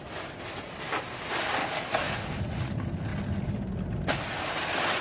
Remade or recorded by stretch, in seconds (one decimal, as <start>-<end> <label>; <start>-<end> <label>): 0.0-1.6 recorded; 1.6-2.2 remade; 2.2-5.0 recorded